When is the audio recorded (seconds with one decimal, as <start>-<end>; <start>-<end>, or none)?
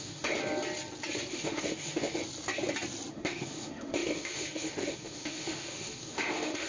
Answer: 0.4-1.3; 2.2-3.1